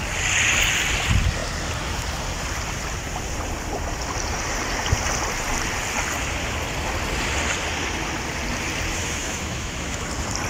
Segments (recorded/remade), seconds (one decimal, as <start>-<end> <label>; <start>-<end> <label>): 0.0-9.0 recorded; 9.0-10.1 remade; 10.1-10.5 recorded